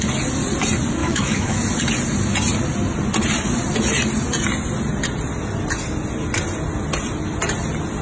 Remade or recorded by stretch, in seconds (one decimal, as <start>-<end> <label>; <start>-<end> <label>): 0.0-1.0 recorded; 1.0-1.6 remade; 1.6-8.0 recorded